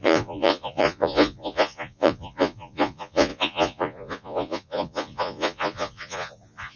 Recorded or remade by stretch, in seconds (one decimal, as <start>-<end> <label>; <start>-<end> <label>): 0.0-6.8 remade